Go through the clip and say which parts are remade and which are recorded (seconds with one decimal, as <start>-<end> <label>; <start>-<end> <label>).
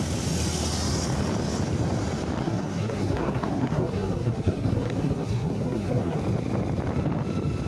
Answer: 0.0-2.4 recorded; 2.4-6.2 remade; 6.2-7.7 recorded